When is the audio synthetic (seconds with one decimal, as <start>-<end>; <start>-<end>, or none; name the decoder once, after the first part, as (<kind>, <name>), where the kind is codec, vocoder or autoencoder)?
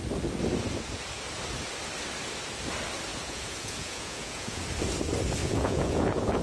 3.1-4.6 (vocoder, Vocos); 5.4-6.4